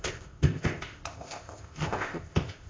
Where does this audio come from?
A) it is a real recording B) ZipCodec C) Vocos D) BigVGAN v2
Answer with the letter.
B